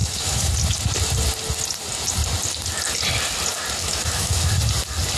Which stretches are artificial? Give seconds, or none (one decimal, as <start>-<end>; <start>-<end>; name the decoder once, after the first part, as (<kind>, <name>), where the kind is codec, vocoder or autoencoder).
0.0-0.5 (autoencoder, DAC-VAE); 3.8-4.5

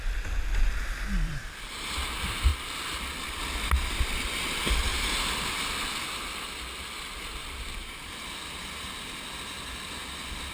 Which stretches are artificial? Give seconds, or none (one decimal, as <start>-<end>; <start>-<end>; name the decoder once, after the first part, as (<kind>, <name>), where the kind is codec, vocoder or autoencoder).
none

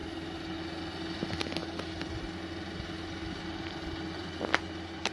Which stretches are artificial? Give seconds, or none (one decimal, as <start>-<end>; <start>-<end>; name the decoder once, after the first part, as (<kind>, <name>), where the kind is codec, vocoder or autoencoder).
none

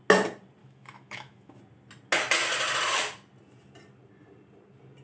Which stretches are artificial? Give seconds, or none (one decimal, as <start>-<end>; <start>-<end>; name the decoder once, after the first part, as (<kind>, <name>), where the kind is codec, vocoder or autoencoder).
0.6-1.6 (autoencoder, DAC-VAE)

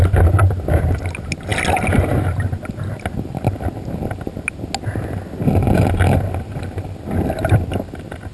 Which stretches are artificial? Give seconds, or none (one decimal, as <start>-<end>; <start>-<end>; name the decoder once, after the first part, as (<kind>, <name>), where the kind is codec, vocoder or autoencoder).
none

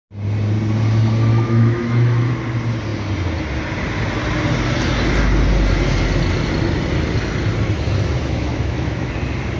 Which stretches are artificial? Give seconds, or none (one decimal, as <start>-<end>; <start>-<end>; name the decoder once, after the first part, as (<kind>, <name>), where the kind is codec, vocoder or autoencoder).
1.3-2.3 (autoencoder, DAC-VAE); 8.5-9.1

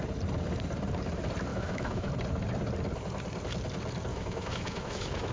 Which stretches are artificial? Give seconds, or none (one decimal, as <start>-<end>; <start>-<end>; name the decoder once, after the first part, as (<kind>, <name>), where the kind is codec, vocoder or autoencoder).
1.5-2.1 (autoencoder, DAC-VAE); 4.1-5.3